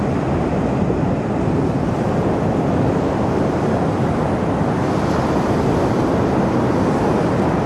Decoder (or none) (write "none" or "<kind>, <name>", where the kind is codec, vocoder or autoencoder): none